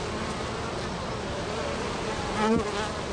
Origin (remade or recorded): recorded